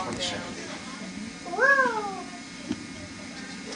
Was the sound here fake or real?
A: real